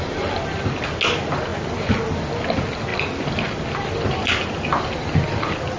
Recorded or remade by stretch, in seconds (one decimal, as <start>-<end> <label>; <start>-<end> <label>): 0.0-5.8 recorded